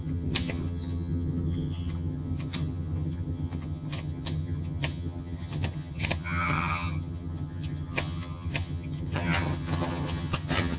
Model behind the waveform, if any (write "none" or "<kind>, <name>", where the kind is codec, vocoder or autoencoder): vocoder, HiFi-GAN